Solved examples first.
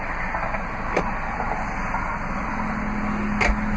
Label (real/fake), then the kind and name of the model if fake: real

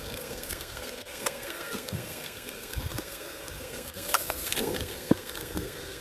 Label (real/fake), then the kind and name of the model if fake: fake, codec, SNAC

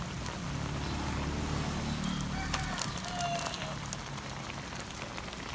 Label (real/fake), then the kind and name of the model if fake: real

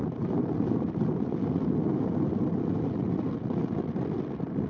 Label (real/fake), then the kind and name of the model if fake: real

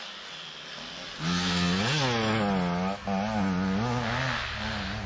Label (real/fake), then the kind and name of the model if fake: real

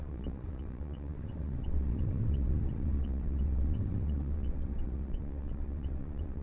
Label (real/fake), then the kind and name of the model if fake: fake, vocoder, WaveNeXt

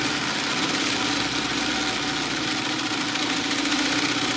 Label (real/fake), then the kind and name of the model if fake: real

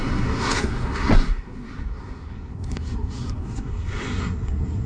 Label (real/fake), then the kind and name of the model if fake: fake, codec, SNAC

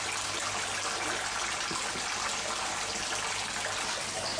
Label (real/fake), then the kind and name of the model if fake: real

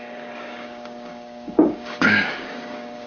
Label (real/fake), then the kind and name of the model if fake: fake, codec, DAC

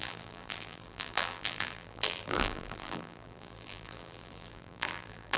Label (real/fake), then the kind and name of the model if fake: fake, vocoder, BigVGAN v2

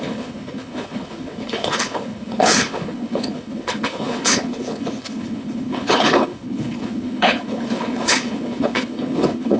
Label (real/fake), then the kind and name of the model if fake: fake, codec, HILCodec